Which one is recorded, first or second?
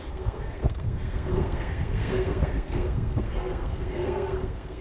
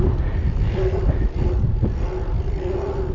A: second